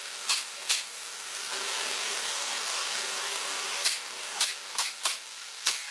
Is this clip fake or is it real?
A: fake